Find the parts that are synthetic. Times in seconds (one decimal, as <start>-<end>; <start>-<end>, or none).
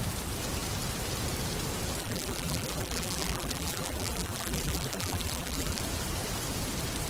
2.0-5.8